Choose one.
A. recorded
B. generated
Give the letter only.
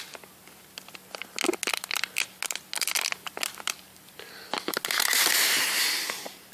A